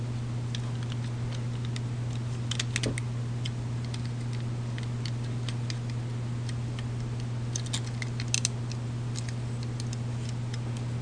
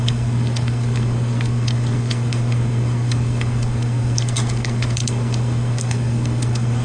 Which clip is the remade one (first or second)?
second